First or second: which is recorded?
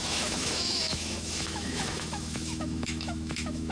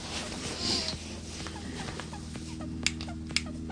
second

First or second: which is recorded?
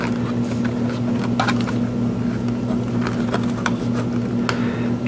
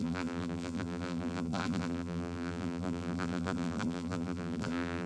first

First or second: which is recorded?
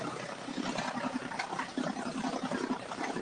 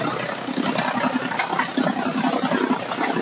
second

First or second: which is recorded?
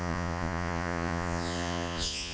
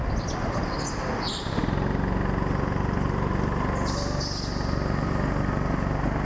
second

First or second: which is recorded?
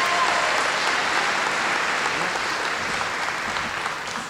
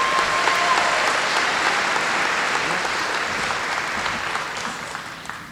first